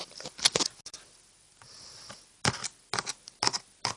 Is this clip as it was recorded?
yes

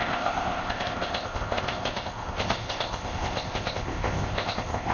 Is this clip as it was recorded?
no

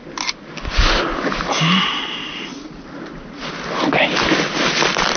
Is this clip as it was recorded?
yes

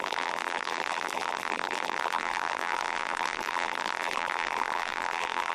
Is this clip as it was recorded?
no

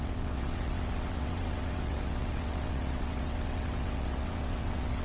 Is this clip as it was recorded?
no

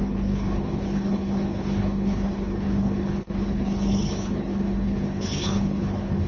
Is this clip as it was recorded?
no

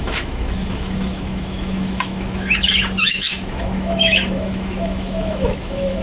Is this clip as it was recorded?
no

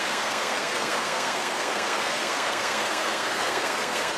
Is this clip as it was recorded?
no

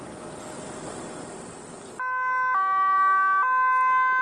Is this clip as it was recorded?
yes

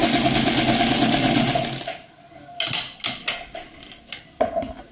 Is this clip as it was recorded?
yes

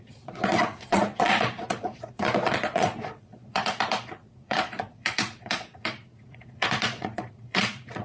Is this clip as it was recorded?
no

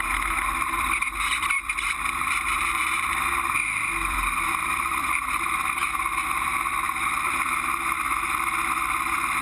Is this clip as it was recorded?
no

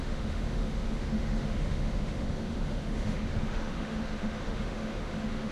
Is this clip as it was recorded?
no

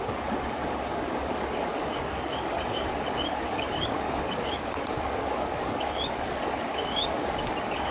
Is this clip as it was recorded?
no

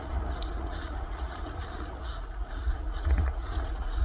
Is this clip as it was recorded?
no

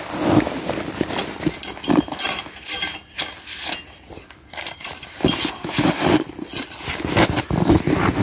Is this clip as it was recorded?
yes